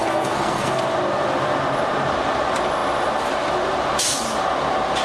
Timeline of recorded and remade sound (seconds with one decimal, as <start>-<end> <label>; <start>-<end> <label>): 0.0-0.8 remade; 0.8-5.0 recorded